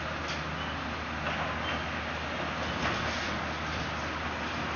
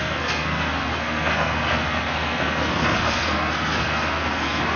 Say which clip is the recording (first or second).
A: first